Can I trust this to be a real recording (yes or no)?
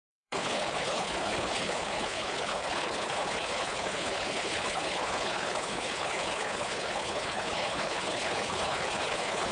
no